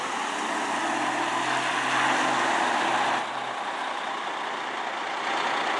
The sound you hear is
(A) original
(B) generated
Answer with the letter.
A